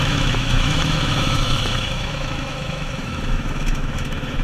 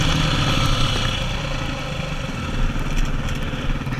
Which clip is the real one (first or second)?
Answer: second